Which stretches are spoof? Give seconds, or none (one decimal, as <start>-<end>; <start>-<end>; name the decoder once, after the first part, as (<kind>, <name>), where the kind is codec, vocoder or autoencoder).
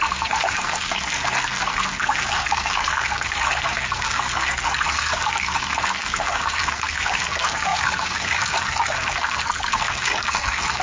0.0-10.8 (codec, SNAC)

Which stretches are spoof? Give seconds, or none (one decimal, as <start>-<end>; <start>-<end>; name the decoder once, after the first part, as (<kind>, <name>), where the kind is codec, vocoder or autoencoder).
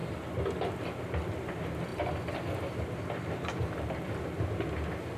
none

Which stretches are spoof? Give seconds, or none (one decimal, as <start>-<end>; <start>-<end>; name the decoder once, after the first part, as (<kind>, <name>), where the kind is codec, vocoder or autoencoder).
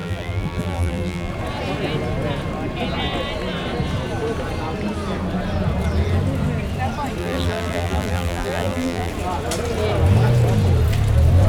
0.0-1.3 (vocoder, BigVGAN v2); 7.2-9.1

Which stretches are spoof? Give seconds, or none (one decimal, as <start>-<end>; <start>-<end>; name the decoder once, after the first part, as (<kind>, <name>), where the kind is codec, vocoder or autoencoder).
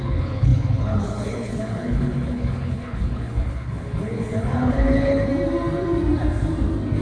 0.0-5.3 (codec, HILCodec)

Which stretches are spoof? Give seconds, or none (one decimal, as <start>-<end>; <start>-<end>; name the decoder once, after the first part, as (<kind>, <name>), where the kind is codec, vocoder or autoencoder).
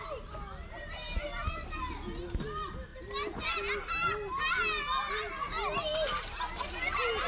none